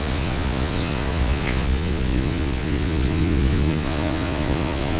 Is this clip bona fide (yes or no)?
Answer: no